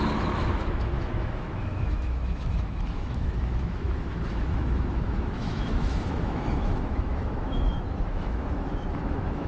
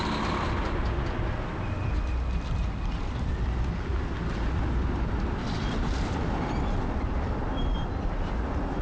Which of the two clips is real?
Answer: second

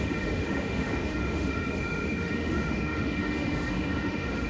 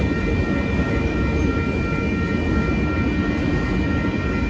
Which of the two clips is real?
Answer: second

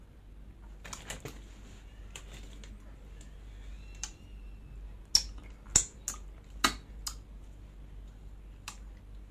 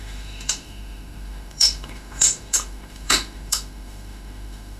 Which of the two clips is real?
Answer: first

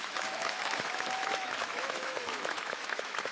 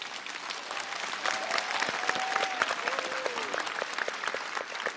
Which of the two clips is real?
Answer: second